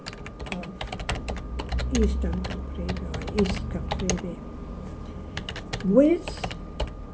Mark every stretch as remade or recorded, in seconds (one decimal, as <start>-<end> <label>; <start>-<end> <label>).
0.0-1.8 remade; 1.8-4.2 recorded; 4.2-7.1 remade